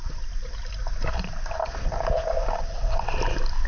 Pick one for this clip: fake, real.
real